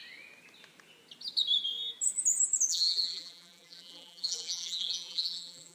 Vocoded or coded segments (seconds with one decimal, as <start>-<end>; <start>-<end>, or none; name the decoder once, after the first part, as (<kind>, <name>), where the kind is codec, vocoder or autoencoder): 2.7-5.7 (vocoder, BigVGAN v2)